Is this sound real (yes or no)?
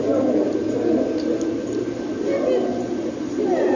yes